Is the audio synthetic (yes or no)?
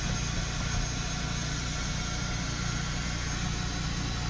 no